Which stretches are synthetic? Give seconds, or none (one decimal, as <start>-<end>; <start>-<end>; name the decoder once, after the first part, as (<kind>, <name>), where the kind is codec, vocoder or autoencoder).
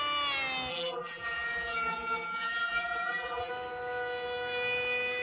0.7-3.5 (vocoder, BigVGAN v2)